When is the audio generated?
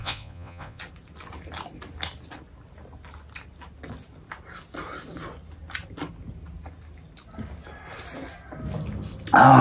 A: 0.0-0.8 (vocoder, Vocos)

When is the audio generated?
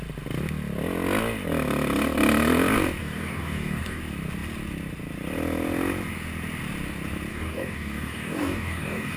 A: 3.0-4.0 (codec, DAC); 7.3-9.2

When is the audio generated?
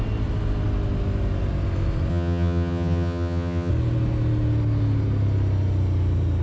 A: 2.1-3.7 (vocoder, HiFi-GAN)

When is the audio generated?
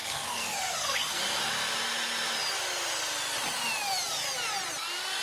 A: 0.0-1.4 (codec, SNAC)